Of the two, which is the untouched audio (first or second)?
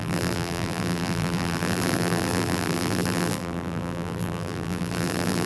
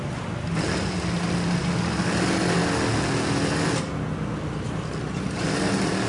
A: second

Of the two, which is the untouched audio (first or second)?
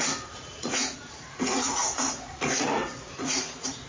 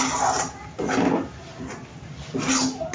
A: second